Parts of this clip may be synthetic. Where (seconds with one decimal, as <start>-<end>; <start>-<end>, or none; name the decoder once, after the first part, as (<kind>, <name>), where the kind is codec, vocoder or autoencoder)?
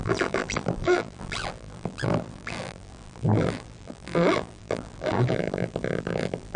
0.0-6.6 (vocoder, BigVGAN v2)